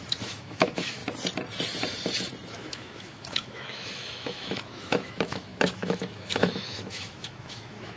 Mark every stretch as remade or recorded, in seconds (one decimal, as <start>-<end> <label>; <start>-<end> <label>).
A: 0.0-1.0 remade; 1.0-2.5 recorded; 2.5-8.0 remade